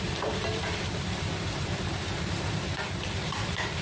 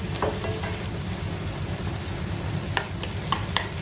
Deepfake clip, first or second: first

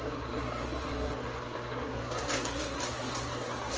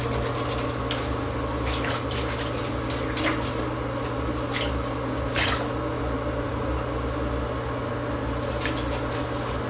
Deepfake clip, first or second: first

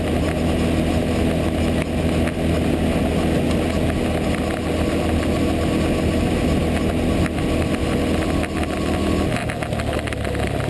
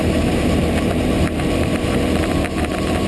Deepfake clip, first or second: second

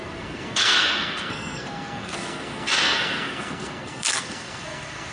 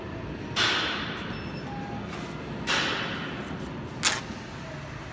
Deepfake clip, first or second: first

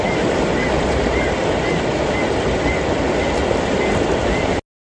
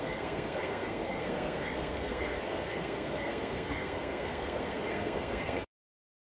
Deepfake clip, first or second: second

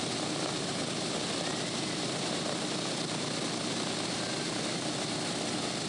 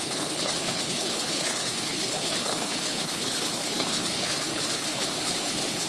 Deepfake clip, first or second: second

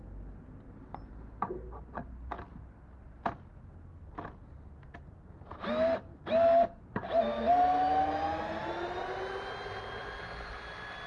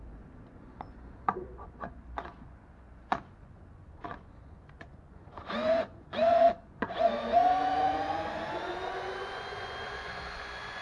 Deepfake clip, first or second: second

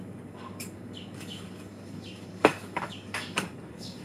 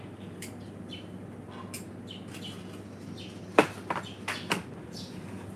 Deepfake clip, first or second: first